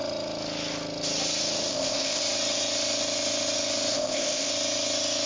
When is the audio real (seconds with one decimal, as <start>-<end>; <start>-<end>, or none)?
0.0-1.7; 2.2-3.9; 4.5-5.3